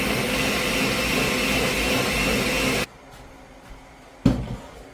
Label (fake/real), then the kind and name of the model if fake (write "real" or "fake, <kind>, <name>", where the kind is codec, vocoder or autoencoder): real